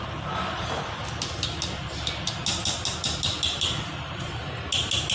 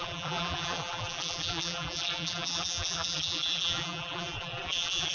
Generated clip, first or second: second